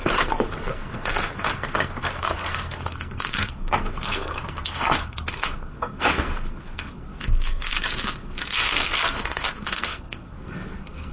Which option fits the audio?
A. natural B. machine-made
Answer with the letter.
B